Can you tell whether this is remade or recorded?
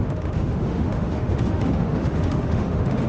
remade